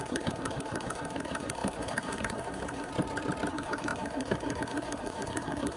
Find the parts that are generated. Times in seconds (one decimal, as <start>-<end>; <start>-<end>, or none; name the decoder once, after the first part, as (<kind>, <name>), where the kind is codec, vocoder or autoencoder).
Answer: 0.0-2.9 (codec, SNAC); 3.5-5.8